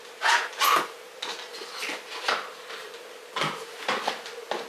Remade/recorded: recorded